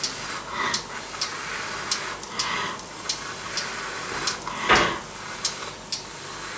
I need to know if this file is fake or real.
real